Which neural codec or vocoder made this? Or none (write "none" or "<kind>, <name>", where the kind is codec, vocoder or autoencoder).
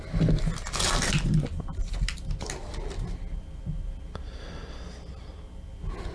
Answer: none